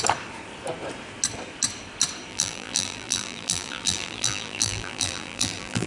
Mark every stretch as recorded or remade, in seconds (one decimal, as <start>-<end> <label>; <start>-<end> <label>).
0.0-2.3 recorded; 2.3-5.9 remade